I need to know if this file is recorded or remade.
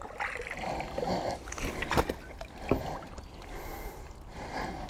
recorded